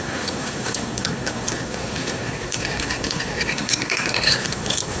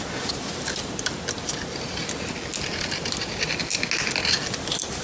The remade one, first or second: first